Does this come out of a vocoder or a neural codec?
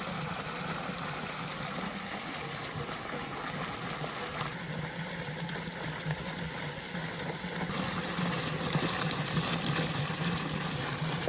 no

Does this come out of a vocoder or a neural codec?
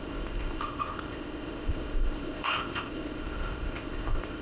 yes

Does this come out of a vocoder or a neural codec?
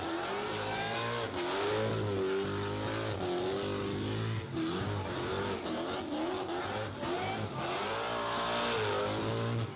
no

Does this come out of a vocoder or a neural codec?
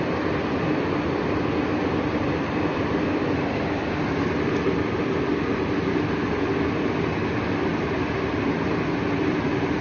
no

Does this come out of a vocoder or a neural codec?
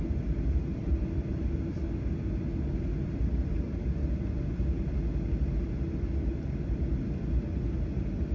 no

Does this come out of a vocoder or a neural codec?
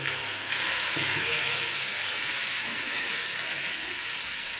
yes